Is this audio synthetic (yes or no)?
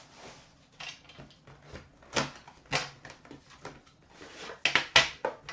no